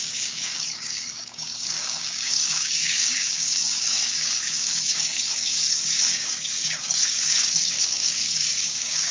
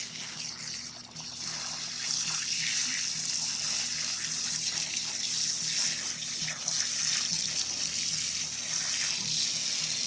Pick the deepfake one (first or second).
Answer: first